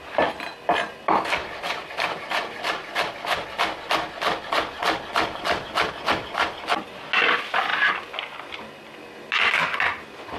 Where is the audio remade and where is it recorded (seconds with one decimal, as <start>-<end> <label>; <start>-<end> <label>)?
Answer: 0.0-10.4 recorded